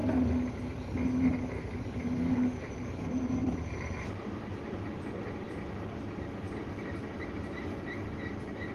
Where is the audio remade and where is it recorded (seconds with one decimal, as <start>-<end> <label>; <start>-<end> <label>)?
0.0-3.4 recorded; 3.4-4.3 remade; 4.3-8.7 recorded